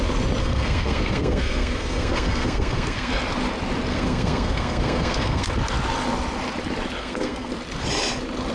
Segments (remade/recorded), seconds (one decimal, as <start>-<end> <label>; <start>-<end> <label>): 0.0-0.4 recorded; 0.4-3.1 remade; 3.1-3.9 recorded; 3.9-5.5 remade; 5.5-7.0 recorded; 7.0-7.5 remade; 7.5-8.5 recorded